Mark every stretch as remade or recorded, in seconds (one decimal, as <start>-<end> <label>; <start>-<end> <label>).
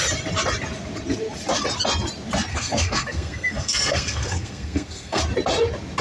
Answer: 0.0-2.5 recorded; 2.5-5.2 remade; 5.2-6.0 recorded